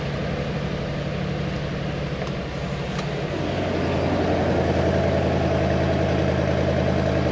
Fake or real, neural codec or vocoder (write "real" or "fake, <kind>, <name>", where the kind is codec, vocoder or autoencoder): real